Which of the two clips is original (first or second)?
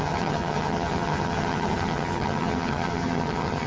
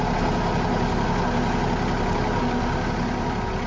second